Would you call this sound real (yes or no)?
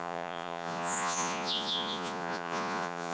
no